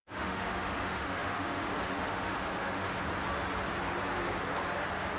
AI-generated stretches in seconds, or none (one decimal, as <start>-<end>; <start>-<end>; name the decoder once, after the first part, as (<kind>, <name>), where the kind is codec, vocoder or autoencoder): 0.0-3.0 (autoencoder, DAC-VAE)